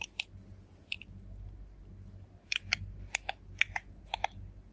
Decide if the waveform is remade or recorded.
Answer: recorded